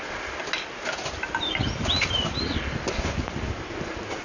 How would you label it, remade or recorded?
recorded